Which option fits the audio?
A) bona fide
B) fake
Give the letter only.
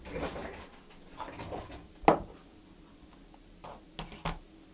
A